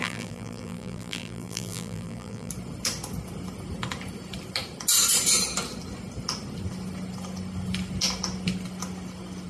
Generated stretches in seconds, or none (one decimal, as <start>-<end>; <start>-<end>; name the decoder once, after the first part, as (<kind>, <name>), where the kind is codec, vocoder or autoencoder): 0.0-2.5 (vocoder, BigVGAN v2)

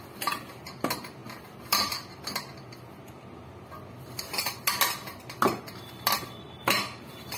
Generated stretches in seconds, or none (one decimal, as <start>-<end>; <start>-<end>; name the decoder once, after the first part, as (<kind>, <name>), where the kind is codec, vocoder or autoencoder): none